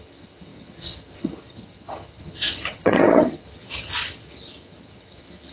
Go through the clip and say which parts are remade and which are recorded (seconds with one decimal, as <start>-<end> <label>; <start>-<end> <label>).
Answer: 0.0-5.5 remade